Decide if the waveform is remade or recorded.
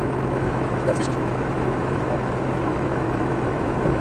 remade